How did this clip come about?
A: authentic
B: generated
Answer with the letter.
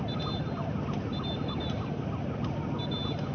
A